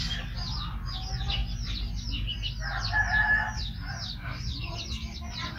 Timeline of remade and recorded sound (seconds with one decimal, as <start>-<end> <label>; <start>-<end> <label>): 0.0-5.6 recorded